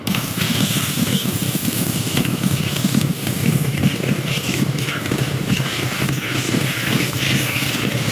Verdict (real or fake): fake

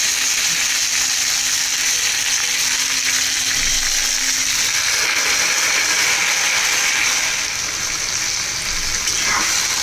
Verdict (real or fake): real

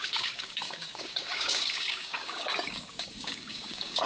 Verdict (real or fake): fake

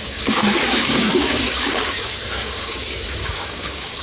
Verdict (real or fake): fake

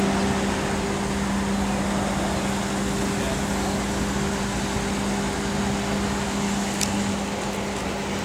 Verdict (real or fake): real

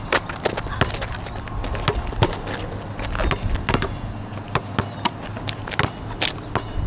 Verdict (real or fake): real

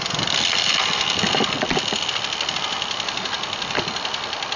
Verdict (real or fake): real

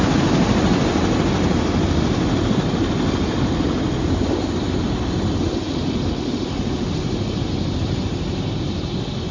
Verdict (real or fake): real